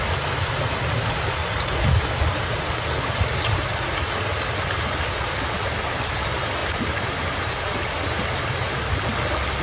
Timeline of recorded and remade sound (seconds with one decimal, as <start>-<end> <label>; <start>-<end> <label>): 0.0-6.6 recorded; 6.6-7.5 remade; 7.5-9.6 recorded